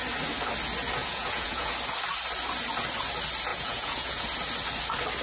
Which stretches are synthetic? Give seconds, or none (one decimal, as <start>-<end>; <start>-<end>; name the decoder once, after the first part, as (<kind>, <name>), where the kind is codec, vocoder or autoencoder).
1.0-1.7 (vocoder, Vocos); 3.5-4.2

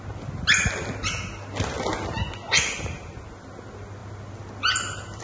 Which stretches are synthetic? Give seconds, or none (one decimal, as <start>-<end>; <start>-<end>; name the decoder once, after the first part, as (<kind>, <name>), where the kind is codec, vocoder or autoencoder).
none

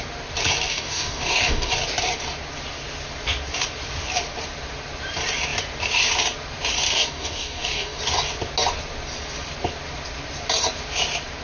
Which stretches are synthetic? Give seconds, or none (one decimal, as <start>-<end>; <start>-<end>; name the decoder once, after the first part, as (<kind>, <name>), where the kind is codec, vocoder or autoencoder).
0.7-1.7 (codec, DAC); 6.9-8.0

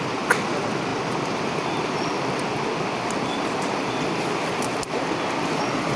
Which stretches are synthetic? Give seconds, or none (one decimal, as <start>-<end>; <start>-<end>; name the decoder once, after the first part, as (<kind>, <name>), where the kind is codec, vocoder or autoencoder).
none

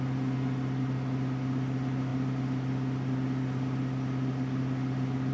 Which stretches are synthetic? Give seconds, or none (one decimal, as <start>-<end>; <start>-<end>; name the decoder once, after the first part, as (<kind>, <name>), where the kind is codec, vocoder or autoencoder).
none

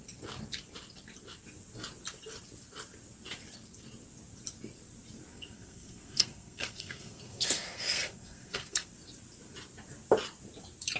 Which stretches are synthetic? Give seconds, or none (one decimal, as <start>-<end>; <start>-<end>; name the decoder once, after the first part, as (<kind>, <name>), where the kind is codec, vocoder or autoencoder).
5.3-8.9 (codec, SNAC)

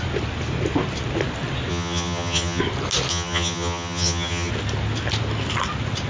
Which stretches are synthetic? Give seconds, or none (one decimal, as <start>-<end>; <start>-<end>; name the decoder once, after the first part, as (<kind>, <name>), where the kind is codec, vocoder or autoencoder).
1.7-2.6 (vocoder, HiFi-GAN); 3.1-4.5

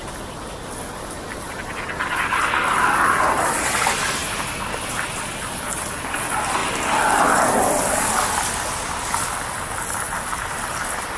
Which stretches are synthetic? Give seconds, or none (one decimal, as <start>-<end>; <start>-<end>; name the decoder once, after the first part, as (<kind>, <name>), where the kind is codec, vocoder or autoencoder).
6.6-8.0 (vocoder, BigVGAN v2)